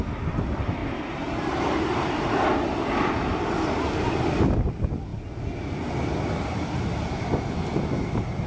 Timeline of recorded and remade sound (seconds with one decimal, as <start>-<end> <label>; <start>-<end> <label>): 0.0-0.8 recorded; 0.8-2.2 remade; 2.2-8.5 recorded

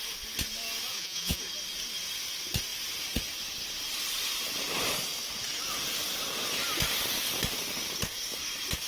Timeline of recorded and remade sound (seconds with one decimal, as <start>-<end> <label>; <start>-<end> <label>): 0.0-0.9 recorded; 0.9-1.4 remade; 1.4-8.9 recorded